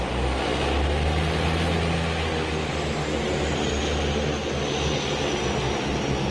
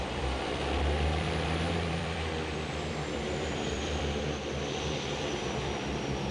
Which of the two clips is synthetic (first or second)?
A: second